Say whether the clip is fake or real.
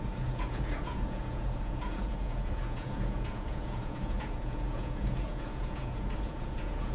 fake